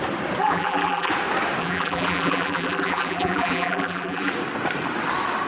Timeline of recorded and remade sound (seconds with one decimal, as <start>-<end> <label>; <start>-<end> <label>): 0.0-0.4 recorded; 0.4-1.1 remade; 1.1-1.6 recorded; 1.6-4.3 remade; 4.3-5.5 recorded

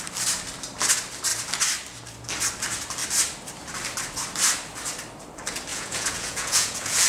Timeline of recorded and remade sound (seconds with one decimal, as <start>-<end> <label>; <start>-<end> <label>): 0.0-5.7 recorded; 5.7-7.1 remade